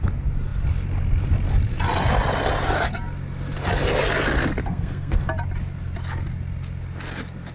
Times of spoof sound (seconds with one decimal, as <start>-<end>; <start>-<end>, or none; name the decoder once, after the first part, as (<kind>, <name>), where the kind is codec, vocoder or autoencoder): 4.6-5.2 (codec, SNAC)